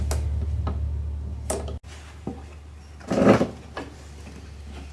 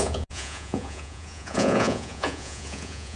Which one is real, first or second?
first